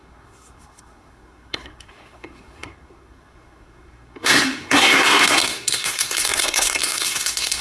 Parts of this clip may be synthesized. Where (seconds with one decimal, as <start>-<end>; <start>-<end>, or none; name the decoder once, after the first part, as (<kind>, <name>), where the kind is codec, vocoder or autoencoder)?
0.0-7.6 (codec, SNAC)